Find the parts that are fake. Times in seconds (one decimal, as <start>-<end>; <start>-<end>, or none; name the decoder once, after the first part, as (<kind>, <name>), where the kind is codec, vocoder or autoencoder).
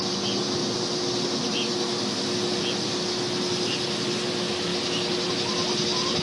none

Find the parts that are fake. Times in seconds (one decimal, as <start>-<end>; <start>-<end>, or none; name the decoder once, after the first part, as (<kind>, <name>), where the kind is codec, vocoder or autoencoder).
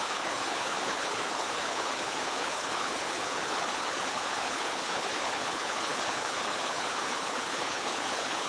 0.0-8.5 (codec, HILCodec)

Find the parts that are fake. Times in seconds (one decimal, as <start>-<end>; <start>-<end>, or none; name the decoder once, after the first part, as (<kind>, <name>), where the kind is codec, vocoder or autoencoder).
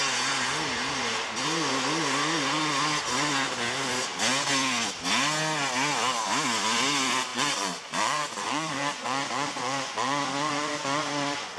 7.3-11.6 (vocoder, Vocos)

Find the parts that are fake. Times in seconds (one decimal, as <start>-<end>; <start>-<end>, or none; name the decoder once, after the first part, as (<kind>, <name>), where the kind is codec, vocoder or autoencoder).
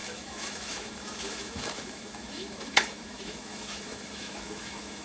0.0-5.0 (autoencoder, DAC-VAE)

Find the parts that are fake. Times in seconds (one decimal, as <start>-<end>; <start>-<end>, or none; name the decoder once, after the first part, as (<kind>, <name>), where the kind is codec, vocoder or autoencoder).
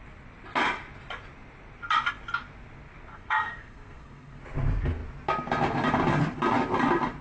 3.1-4.4 (codec, SNAC)